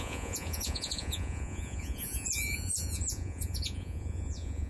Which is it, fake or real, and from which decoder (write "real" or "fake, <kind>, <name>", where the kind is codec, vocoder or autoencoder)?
fake, vocoder, Vocos